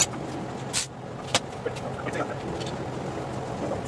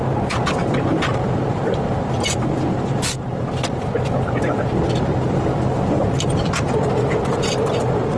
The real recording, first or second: first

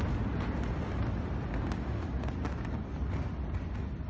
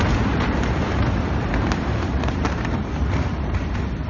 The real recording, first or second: first